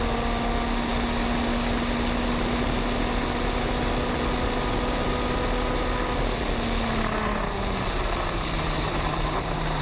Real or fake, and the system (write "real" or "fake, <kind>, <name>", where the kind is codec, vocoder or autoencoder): real